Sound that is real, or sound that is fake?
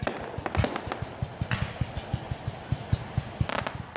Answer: real